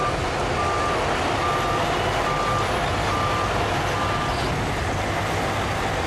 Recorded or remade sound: recorded